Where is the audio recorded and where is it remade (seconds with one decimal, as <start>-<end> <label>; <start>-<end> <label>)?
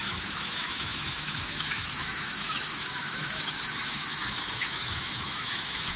0.0-6.0 remade